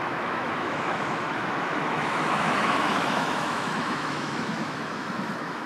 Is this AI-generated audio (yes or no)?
yes